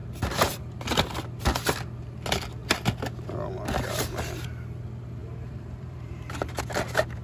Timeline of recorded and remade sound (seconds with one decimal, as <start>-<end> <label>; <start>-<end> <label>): 0.0-0.6 remade; 0.6-5.2 recorded; 5.2-6.6 remade; 6.6-7.2 recorded